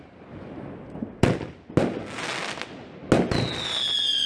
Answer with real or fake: real